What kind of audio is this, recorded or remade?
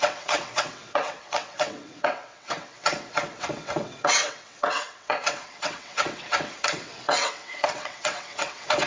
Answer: remade